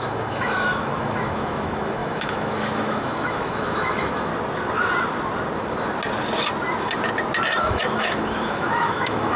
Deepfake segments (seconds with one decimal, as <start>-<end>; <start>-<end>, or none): 0.0-4.3; 7.6-9.4